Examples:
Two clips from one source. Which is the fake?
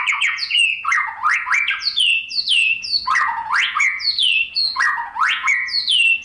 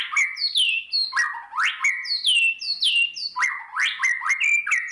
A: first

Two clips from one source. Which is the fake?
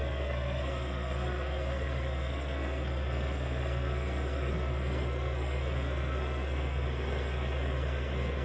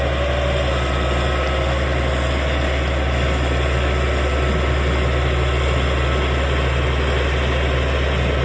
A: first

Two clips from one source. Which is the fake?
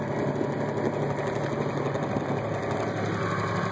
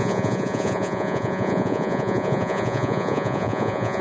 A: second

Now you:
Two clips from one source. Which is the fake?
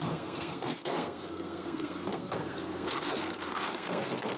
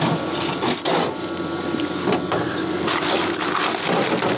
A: first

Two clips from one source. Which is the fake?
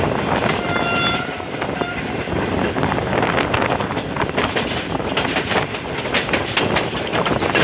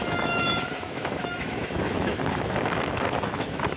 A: second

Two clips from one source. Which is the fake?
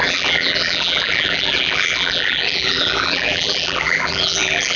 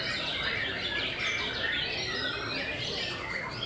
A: first